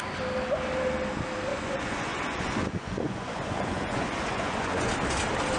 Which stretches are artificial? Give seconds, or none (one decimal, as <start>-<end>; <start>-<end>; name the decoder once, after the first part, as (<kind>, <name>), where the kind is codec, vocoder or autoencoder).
1.5-4.9 (vocoder, Vocos)